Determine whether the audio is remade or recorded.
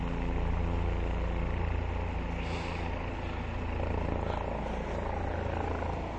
recorded